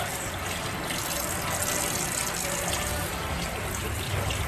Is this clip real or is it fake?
real